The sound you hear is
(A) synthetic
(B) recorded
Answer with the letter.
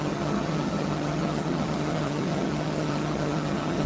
A